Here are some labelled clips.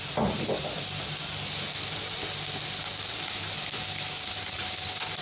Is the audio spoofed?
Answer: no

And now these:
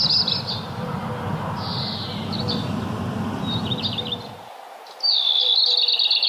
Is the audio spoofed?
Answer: no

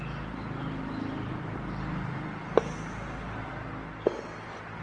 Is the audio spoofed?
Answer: no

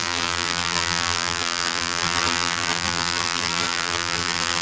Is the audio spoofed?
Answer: yes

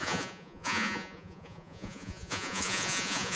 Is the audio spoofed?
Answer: yes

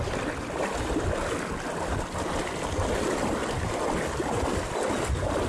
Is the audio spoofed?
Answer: no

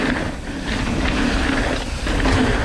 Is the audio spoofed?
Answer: no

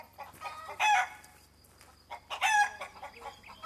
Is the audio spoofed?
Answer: no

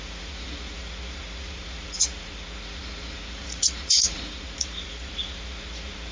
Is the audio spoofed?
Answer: yes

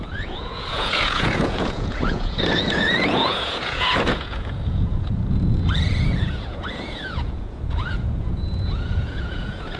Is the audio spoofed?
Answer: yes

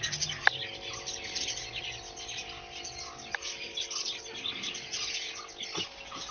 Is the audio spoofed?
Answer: no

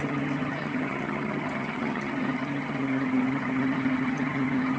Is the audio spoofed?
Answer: yes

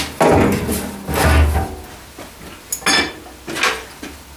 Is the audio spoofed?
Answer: no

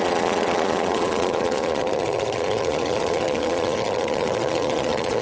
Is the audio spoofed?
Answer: yes